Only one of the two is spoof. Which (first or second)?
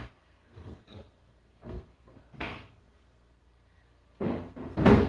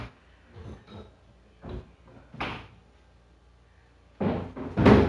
first